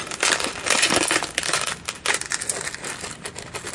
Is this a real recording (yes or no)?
yes